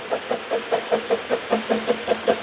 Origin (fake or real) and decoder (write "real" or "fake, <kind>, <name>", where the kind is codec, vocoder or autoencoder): real